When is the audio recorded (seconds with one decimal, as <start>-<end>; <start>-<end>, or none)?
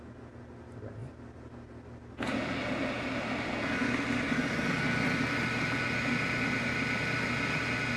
0.0-8.0